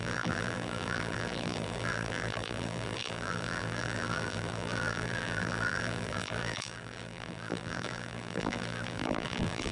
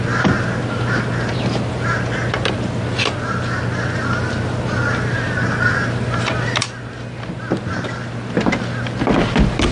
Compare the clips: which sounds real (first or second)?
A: second